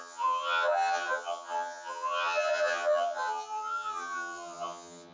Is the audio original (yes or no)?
no